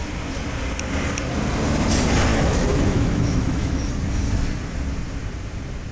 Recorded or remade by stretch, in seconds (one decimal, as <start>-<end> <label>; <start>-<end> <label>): 0.0-2.3 recorded; 2.3-3.9 remade; 3.9-5.9 recorded